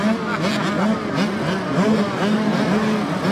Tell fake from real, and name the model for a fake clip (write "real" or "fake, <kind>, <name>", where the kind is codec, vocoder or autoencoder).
real